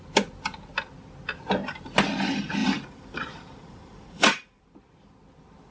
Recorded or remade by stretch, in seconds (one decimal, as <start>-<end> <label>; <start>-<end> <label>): 0.0-2.6 recorded; 2.6-4.6 remade; 4.6-5.7 recorded